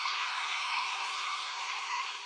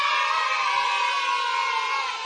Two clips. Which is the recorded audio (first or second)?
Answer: second